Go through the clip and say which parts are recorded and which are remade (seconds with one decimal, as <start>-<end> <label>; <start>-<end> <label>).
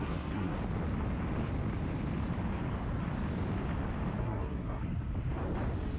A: 0.0-0.6 remade; 0.6-4.2 recorded; 4.2-4.8 remade; 4.8-6.0 recorded